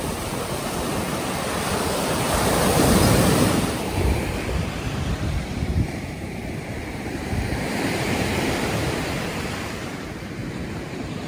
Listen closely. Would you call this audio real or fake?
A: fake